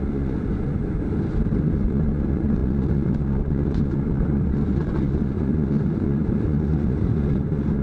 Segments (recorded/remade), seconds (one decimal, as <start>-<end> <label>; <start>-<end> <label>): 0.0-0.8 remade; 0.8-1.6 recorded; 1.6-7.8 remade